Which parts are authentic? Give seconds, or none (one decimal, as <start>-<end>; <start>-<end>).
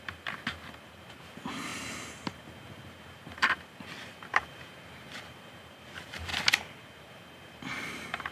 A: 6.3-6.8